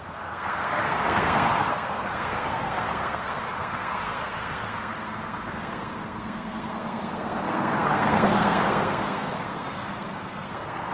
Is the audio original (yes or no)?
no